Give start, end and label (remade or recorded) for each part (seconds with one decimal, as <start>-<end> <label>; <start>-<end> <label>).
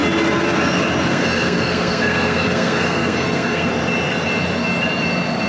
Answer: 0.0-1.1 recorded; 1.1-3.7 remade; 3.7-5.5 recorded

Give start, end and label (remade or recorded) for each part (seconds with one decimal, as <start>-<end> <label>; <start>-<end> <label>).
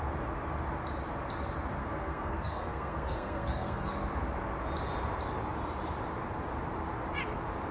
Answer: 0.0-1.8 recorded; 1.8-3.9 remade; 3.9-7.7 recorded